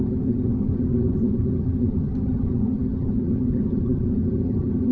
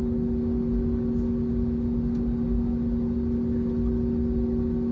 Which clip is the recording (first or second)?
second